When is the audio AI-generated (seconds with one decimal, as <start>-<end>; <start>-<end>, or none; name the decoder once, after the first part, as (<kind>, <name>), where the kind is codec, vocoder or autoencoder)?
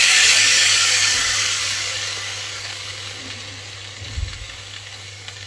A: 0.0-3.2 (codec, DAC); 4.1-5.5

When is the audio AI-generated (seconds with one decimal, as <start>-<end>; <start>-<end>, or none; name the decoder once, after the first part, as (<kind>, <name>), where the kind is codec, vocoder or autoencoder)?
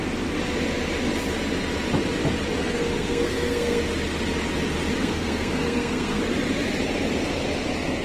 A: 2.6-3.8 (codec, SNAC); 5.0-6.2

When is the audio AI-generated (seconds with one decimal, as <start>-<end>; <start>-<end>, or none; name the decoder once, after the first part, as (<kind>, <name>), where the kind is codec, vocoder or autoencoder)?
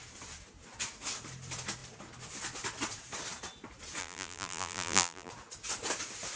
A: 4.0-5.3 (vocoder, BigVGAN v2)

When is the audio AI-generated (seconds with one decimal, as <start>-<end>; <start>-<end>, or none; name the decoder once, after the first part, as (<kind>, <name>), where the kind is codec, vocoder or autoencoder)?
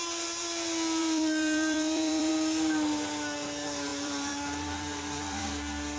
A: 1.0-2.3 (vocoder, BigVGAN v2); 3.9-5.5